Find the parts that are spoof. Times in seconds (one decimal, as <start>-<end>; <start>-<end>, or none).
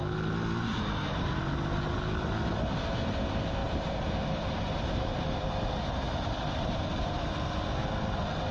3.6-7.3